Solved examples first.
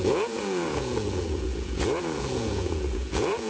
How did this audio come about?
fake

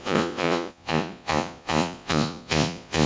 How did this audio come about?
fake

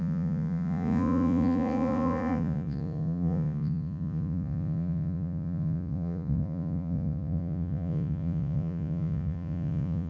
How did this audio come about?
fake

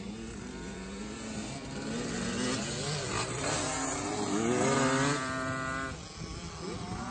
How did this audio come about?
real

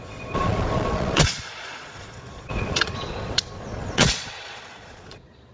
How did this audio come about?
fake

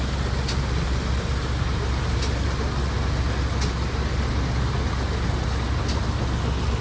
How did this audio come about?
real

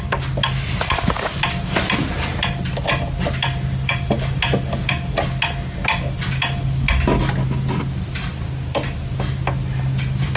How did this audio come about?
real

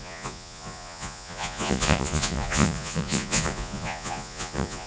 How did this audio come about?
fake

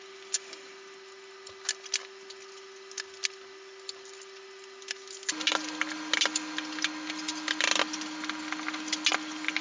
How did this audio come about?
real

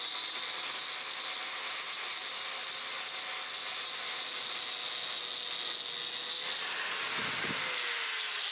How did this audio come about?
real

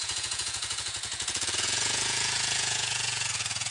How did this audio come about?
fake